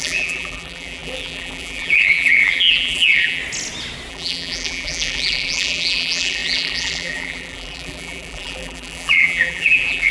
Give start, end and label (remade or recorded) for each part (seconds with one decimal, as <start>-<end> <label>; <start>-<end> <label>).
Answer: 0.0-3.4 remade; 3.4-4.1 recorded; 4.1-10.1 remade